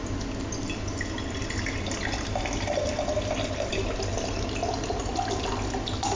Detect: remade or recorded recorded